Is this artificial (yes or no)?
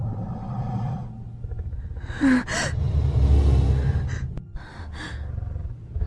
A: no